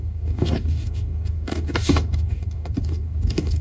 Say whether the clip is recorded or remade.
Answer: remade